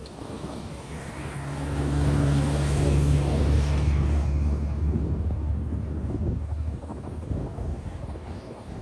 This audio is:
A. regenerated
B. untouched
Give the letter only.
A